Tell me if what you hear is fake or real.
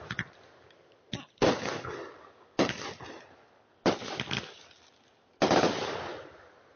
real